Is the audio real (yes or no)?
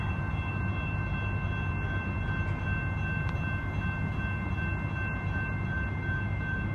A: yes